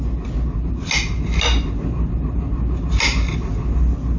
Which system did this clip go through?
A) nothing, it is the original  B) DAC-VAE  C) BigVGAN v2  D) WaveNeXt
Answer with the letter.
A